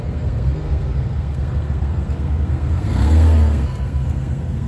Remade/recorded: remade